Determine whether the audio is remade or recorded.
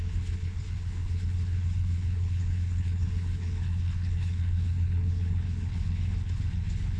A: remade